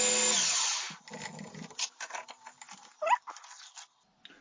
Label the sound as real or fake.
real